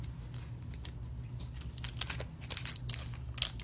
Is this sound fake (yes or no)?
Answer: no